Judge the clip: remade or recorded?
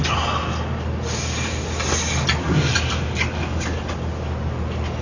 recorded